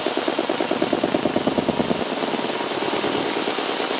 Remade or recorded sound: recorded